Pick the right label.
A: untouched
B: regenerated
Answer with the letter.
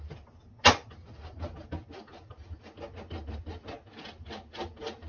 A